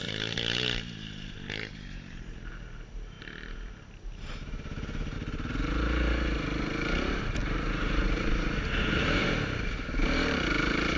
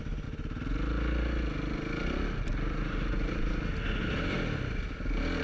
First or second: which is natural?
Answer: second